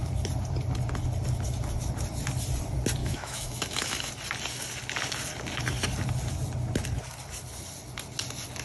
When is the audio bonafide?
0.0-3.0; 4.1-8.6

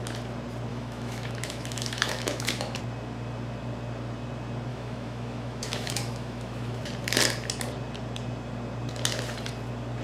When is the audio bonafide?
0.0-0.7; 2.8-4.7; 6.8-10.0

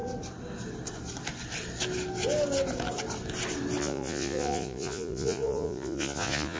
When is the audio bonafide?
0.0-3.8

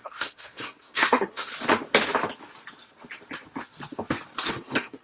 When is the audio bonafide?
1.5-4.5

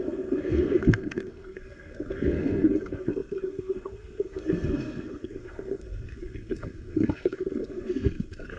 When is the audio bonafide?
none

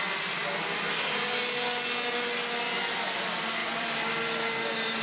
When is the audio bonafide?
0.0-3.6; 4.1-5.0

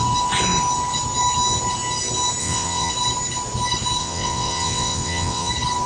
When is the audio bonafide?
0.0-2.4; 2.9-4.0; 5.5-5.9